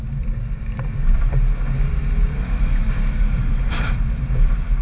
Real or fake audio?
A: fake